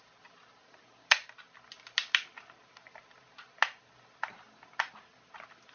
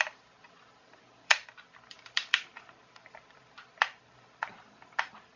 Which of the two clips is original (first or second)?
first